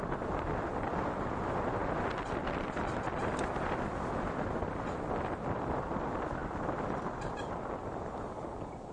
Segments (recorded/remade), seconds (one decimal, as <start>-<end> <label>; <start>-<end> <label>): 0.0-8.9 recorded